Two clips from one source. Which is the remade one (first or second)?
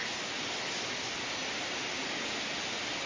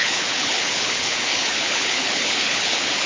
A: second